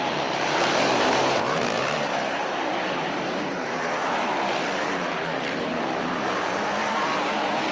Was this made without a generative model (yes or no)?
no